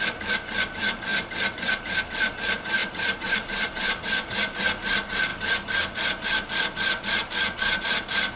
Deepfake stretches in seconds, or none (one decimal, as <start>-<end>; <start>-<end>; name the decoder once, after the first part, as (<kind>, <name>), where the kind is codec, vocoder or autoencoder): 2.8-4.4 (vocoder, BigVGAN v2)